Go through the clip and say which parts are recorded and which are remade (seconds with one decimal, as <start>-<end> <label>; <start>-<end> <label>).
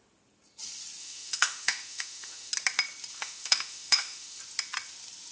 0.0-1.0 recorded; 1.0-2.5 remade; 2.5-3.1 recorded; 3.1-4.4 remade; 4.4-5.3 recorded